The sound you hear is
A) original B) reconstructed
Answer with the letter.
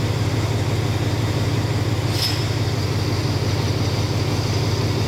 A